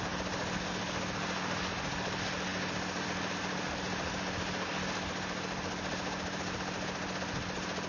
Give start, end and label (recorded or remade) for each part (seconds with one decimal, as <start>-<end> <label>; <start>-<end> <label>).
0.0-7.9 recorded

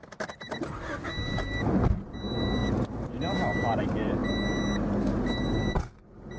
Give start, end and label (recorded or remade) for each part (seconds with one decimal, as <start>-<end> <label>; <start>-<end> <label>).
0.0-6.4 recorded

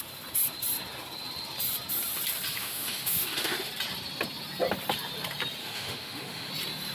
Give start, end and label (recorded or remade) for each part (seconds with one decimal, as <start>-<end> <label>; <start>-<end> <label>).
0.0-2.6 recorded; 2.6-3.7 remade; 3.7-5.6 recorded; 5.6-6.5 remade; 6.5-6.9 recorded

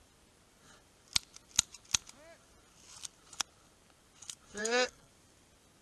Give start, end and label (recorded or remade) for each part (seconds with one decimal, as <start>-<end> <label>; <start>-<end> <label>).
0.0-4.6 recorded; 4.6-5.1 remade; 5.1-5.8 recorded

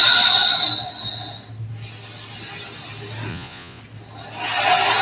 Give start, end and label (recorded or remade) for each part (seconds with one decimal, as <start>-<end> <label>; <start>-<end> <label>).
0.0-3.3 recorded; 3.3-3.8 remade; 3.8-5.0 recorded